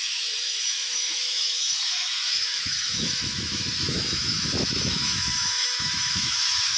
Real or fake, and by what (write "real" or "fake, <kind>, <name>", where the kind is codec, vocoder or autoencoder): fake, autoencoder, DAC-VAE